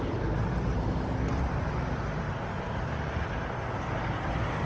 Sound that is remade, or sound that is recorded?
recorded